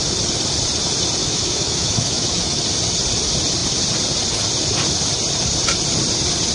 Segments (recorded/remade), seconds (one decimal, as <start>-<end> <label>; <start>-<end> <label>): 0.0-1.2 recorded; 1.2-2.6 remade; 2.6-6.5 recorded